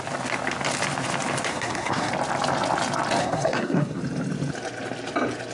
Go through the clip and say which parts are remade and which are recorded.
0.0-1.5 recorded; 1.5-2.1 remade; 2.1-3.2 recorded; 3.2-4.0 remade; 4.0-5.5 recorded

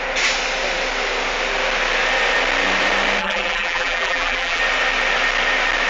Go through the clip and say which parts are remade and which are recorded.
0.0-3.2 recorded; 3.2-4.6 remade; 4.6-5.9 recorded

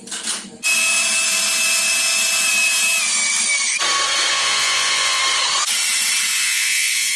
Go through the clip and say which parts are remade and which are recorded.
0.0-4.3 recorded; 4.3-5.2 remade; 5.2-6.3 recorded; 6.3-7.2 remade